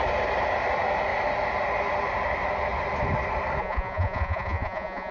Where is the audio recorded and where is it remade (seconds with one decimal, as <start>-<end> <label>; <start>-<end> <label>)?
0.0-3.6 recorded; 3.6-5.1 remade